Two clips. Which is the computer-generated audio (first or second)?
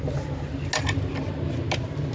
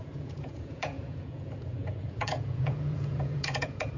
second